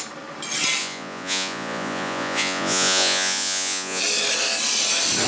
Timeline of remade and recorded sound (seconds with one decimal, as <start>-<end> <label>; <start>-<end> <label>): 0.0-0.8 recorded; 0.8-4.0 remade; 4.0-5.3 recorded